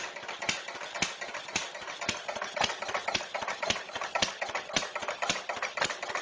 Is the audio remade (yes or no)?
no